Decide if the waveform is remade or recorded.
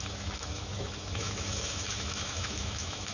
remade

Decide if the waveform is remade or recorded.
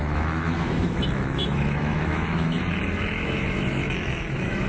remade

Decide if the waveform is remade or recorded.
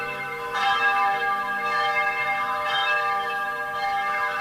remade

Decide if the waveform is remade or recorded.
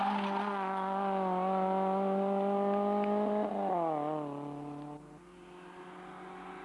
recorded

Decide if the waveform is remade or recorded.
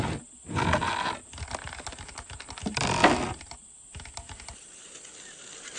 recorded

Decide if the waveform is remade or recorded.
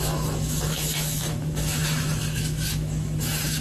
remade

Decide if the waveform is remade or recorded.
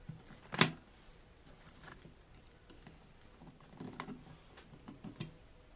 recorded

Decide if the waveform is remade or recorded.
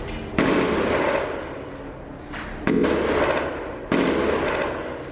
recorded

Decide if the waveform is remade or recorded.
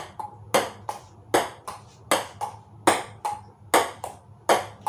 recorded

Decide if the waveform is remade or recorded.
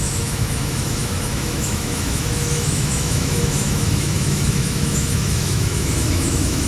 remade